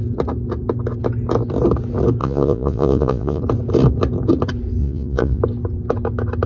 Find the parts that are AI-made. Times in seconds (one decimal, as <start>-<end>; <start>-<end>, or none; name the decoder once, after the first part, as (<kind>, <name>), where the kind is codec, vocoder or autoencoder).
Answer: 2.2-3.4 (vocoder, Vocos); 4.8-5.4